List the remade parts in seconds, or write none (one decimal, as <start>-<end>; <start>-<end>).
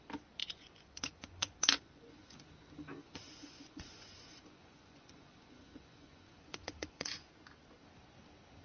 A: 0.4-2.5; 3.0-7.3